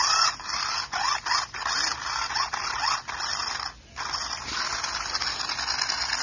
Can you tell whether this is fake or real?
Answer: real